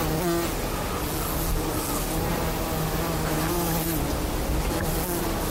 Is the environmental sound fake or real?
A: real